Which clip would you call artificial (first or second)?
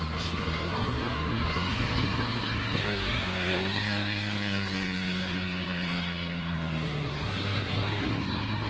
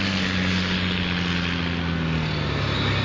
first